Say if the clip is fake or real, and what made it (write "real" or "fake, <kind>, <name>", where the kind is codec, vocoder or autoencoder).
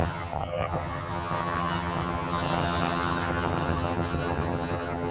fake, vocoder, HiFi-GAN